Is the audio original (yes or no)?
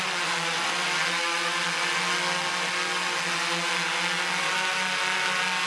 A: yes